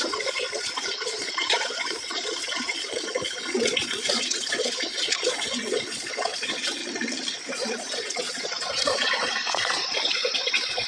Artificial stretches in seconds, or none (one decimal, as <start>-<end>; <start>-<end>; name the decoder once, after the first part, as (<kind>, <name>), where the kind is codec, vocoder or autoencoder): 0.0-6.8 (vocoder, Vocos); 7.5-10.9